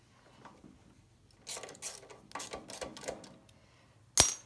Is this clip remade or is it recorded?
recorded